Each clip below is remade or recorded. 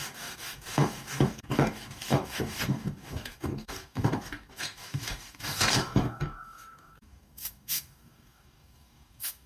remade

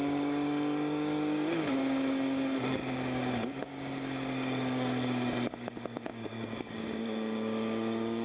remade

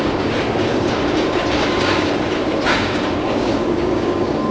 remade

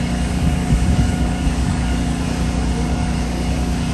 remade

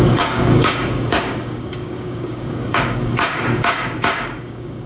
remade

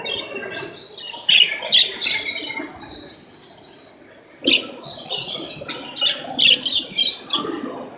recorded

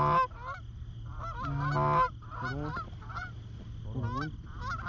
recorded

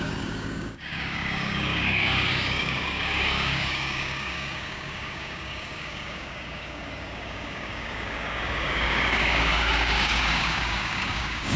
remade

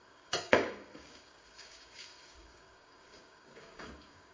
remade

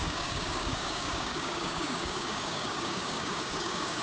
remade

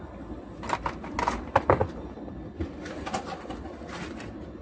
recorded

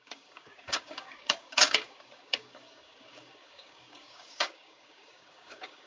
remade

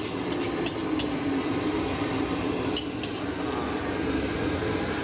recorded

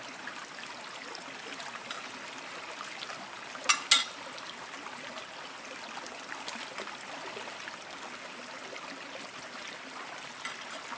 recorded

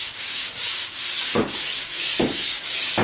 remade